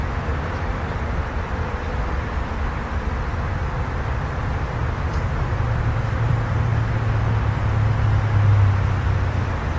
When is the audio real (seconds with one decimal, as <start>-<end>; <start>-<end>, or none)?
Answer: 6.7-9.3